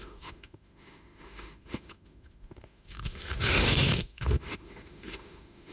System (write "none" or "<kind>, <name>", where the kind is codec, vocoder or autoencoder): autoencoder, DAC-VAE